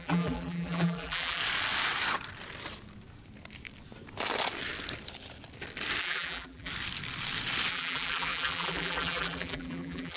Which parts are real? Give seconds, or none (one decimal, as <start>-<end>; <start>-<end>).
1.4-6.0; 6.7-7.7